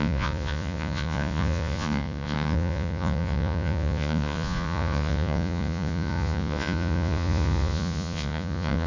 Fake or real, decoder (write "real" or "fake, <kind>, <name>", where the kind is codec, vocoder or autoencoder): fake, vocoder, Vocos